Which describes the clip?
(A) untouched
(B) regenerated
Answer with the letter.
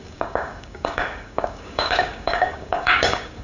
B